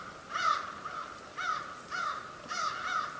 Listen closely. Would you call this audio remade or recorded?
recorded